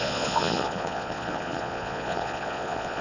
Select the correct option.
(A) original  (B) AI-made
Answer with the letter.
B